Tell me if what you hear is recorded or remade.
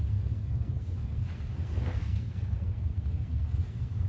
remade